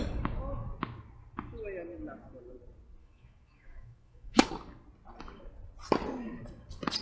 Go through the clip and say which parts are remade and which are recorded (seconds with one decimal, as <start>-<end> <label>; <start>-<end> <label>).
0.0-3.0 recorded; 3.0-4.5 remade; 4.5-7.0 recorded

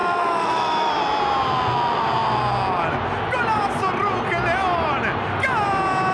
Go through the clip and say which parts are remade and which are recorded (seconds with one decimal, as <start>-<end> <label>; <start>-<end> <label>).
0.0-0.9 remade; 0.9-6.1 recorded

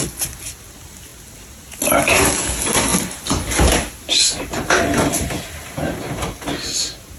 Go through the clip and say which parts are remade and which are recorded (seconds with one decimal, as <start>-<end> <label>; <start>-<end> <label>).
0.0-7.2 recorded

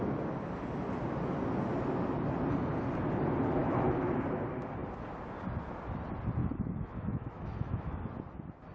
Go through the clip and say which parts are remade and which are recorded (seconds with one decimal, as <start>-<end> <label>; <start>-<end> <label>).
0.0-3.6 recorded; 3.6-4.1 remade; 4.1-6.4 recorded; 6.4-8.0 remade; 8.0-8.7 recorded

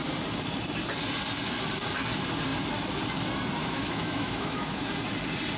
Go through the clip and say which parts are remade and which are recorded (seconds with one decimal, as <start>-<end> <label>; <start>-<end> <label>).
0.0-3.6 recorded; 3.6-4.9 remade; 4.9-5.6 recorded